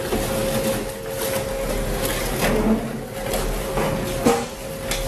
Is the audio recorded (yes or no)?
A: yes